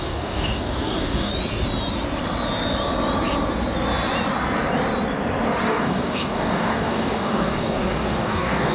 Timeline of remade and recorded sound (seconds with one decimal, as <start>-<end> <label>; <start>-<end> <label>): 0.0-1.3 remade; 1.3-5.7 recorded; 5.7-8.7 remade